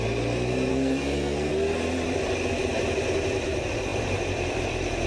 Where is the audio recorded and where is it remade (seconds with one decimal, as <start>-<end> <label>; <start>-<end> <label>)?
0.0-0.7 recorded; 0.7-1.5 remade; 1.5-5.1 recorded